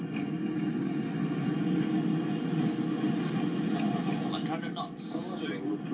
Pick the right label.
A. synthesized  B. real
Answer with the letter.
B